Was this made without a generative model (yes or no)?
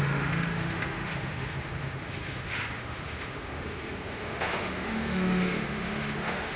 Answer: no